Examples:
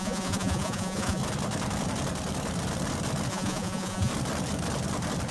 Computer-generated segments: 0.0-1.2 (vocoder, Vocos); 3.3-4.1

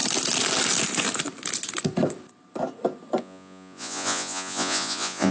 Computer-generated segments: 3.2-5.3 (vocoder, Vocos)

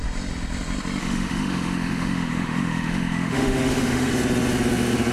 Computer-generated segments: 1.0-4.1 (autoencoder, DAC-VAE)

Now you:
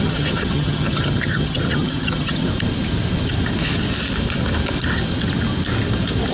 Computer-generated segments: 0.0-2.5 (vocoder, HiFi-GAN)

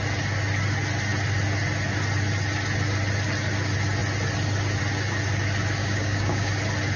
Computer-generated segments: 5.8-6.5 (codec, DAC)